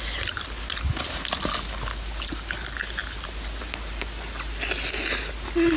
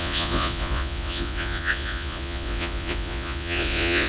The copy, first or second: second